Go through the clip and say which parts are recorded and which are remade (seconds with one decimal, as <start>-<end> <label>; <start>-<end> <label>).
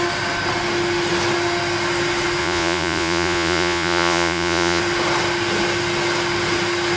0.0-2.4 recorded; 2.4-4.8 remade; 4.8-7.0 recorded